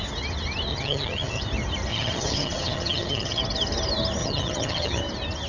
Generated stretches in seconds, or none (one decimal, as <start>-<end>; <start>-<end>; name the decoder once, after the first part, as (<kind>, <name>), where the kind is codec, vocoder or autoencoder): 0.7-1.4 (vocoder, HiFi-GAN); 1.9-3.4; 4.2-5.0

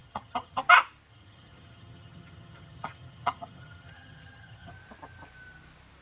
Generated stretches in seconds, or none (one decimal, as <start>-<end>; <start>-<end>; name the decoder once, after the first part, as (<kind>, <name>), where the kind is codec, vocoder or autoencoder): 0.0-0.6 (vocoder, HiFi-GAN); 1.1-4.7